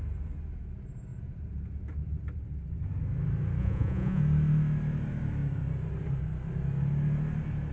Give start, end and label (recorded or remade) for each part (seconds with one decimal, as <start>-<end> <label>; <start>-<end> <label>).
0.0-3.6 recorded; 3.6-4.2 remade; 4.2-7.7 recorded